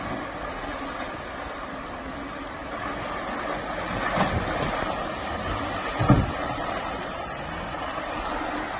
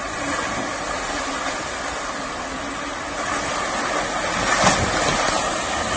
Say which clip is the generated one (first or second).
first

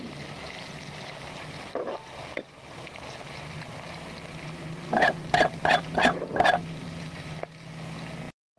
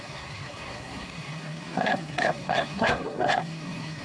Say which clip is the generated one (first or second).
second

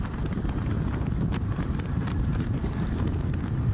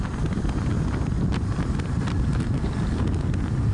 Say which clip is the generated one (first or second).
first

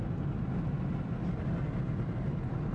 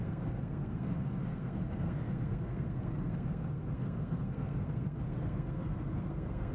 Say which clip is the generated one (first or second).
second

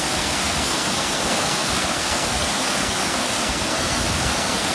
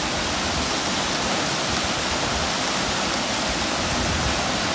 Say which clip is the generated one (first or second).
first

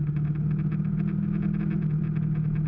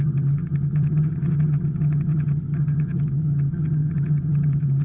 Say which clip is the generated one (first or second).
second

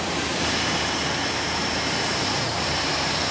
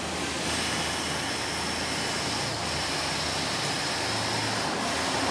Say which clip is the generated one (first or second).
first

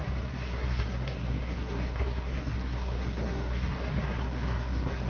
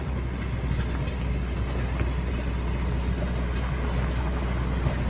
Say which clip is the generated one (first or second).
first